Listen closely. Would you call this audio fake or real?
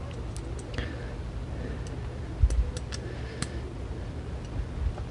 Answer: real